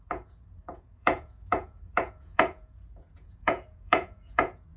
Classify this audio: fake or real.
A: fake